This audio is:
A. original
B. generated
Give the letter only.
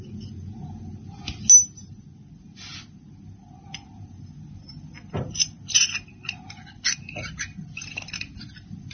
A